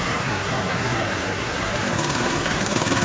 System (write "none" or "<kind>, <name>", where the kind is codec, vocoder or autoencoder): codec, SNAC